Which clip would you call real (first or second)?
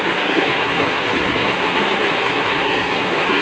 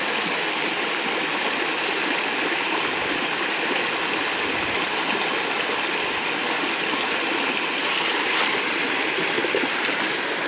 second